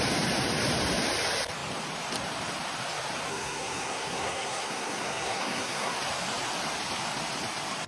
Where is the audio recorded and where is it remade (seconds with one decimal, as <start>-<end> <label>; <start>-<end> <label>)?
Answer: 0.0-3.3 recorded; 3.3-6.0 remade; 6.0-7.9 recorded